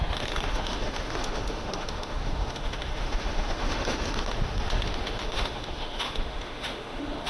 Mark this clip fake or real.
fake